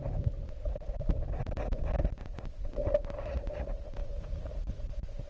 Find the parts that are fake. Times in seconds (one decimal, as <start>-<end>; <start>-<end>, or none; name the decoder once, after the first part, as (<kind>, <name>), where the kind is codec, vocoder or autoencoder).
3.2-5.3 (vocoder, Vocos)